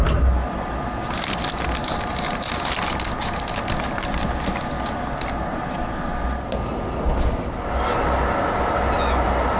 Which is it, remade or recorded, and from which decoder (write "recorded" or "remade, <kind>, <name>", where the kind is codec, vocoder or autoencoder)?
recorded